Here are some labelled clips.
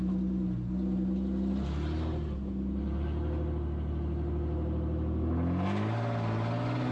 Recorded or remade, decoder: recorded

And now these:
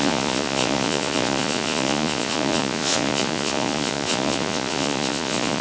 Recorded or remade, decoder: remade, vocoder, Vocos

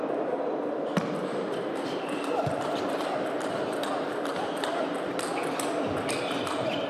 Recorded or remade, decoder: recorded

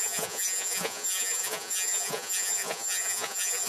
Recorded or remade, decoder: remade, vocoder, Vocos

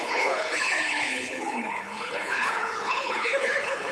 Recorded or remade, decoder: remade, codec, HILCodec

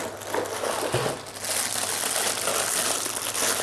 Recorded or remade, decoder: recorded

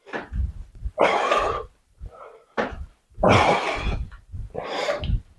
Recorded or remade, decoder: remade, vocoder, BigVGAN v2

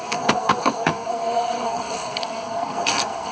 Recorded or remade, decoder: remade, codec, SNAC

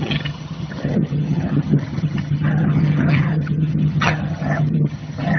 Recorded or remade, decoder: remade, vocoder, HiFi-GAN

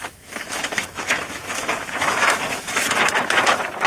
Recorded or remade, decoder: remade, autoencoder, DAC-VAE